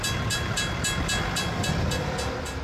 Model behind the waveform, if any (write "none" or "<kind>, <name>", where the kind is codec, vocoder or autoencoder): none